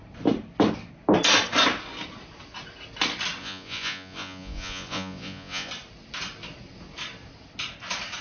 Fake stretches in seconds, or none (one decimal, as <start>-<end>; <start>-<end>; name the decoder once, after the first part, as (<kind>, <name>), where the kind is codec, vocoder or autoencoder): 3.4-5.7 (vocoder, Vocos)